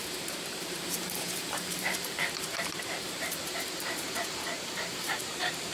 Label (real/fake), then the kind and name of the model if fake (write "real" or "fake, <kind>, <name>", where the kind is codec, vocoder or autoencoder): fake, vocoder, BigVGAN v2